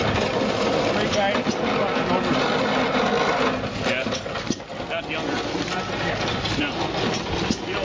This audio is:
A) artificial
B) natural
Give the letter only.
B